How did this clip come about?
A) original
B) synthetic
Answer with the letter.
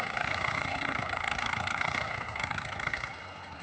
B